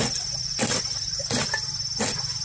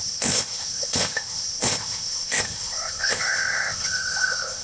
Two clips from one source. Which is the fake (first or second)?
second